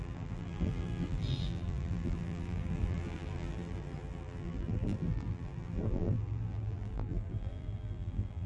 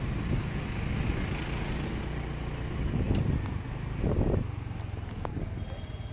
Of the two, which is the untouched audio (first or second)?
second